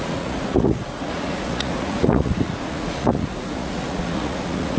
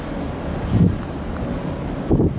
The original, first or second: second